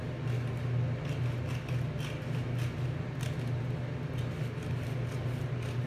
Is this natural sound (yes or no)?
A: yes